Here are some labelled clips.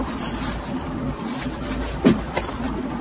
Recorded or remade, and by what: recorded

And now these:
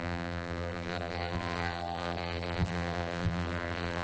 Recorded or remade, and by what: remade, vocoder, BigVGAN v2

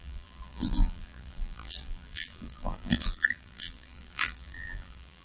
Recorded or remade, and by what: remade, vocoder, BigVGAN v2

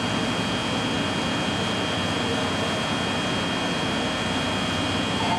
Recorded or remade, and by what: recorded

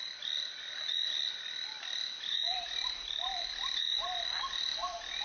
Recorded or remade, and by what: remade, vocoder, BigVGAN v2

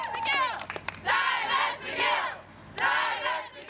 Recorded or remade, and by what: recorded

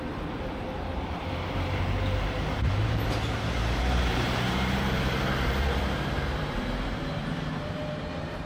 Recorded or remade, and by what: remade, vocoder, BigVGAN v2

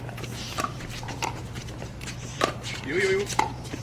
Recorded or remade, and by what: remade, vocoder, BigVGAN v2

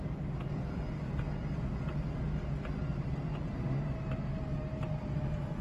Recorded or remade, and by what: recorded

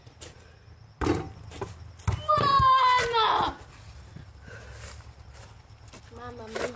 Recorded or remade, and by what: recorded